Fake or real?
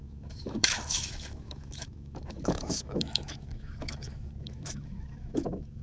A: fake